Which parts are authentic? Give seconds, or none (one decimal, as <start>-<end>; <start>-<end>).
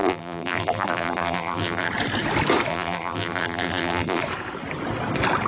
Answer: 1.9-2.7; 4.2-5.5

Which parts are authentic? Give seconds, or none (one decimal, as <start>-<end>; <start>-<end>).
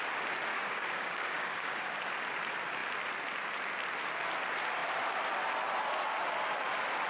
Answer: 0.0-0.5; 1.8-7.1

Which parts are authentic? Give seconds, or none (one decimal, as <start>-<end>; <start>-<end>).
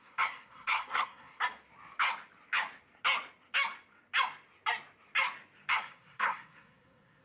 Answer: 1.4-5.7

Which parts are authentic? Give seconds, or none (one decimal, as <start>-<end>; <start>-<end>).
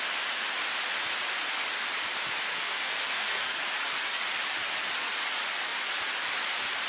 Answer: 0.0-2.5; 3.6-6.9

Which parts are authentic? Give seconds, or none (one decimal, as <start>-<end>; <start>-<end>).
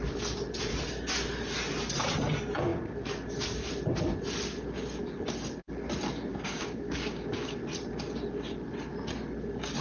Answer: 0.0-6.3; 7.6-9.8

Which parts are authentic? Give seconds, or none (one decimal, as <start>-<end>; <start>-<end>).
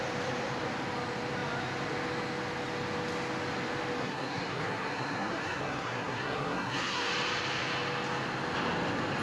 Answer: 0.0-4.0; 7.1-9.2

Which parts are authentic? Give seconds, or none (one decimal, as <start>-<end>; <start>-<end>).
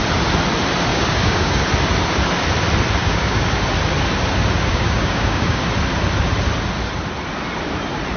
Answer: 0.0-0.9; 1.6-3.0; 3.5-4.7; 5.6-8.2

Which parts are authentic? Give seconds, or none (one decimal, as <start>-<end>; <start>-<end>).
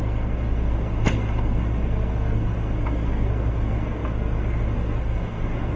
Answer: none